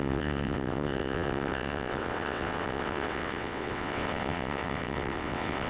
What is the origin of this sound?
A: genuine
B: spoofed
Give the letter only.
B